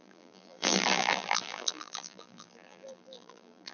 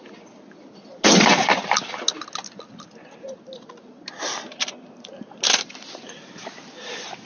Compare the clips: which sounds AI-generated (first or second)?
first